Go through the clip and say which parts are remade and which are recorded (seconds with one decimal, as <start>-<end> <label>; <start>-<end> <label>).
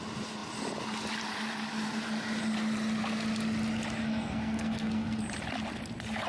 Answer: 0.0-4.0 recorded; 4.0-5.2 remade; 5.2-6.3 recorded